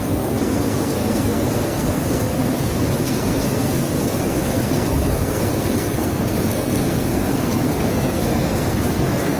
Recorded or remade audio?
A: remade